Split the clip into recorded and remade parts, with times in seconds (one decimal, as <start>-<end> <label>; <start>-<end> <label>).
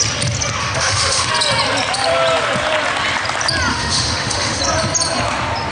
0.0-0.6 recorded; 0.6-1.3 remade; 1.3-3.7 recorded; 3.7-4.6 remade; 4.6-5.7 recorded